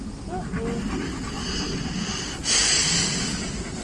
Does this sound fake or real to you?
real